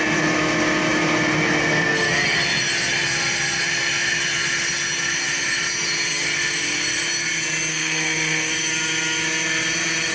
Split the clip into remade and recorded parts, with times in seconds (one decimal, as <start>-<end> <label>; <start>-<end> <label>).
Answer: 0.0-7.7 recorded; 7.7-8.5 remade; 8.5-10.1 recorded